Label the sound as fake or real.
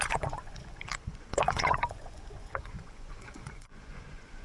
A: fake